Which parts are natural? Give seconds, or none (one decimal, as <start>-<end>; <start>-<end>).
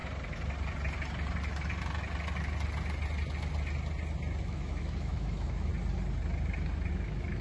0.0-4.4; 5.7-6.9